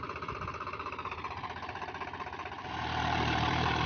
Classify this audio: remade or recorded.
remade